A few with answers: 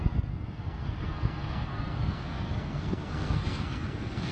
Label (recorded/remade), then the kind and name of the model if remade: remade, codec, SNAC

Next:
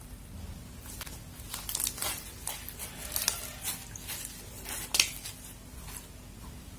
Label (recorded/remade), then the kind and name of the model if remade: recorded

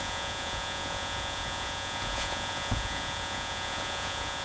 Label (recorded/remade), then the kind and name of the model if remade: remade, vocoder, Vocos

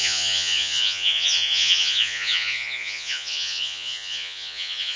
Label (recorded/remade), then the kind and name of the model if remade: remade, vocoder, Vocos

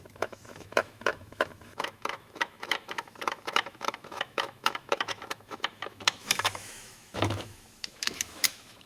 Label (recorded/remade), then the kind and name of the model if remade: remade, autoencoder, DAC-VAE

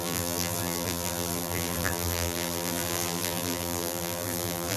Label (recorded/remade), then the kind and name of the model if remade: remade, vocoder, BigVGAN v2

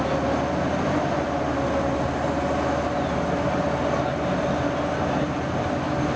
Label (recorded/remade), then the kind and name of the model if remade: recorded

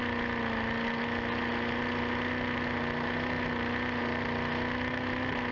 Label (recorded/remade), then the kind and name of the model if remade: recorded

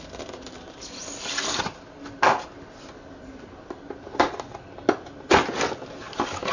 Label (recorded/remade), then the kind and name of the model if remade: recorded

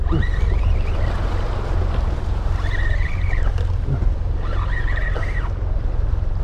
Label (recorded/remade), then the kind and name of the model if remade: recorded